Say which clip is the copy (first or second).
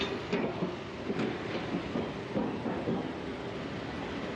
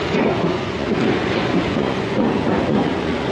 second